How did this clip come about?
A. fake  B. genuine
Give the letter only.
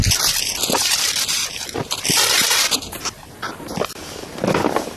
A